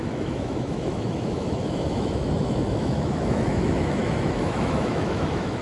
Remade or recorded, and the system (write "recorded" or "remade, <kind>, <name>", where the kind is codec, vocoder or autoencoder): remade, autoencoder, DAC-VAE